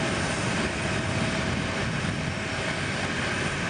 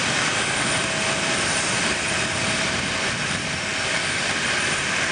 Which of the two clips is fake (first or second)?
second